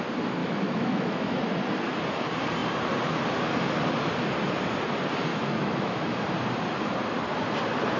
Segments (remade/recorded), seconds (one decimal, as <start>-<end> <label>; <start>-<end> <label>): 0.0-0.4 recorded; 0.4-1.4 remade; 1.4-5.3 recorded; 5.3-6.2 remade; 6.2-8.0 recorded